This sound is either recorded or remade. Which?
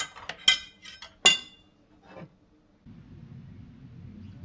recorded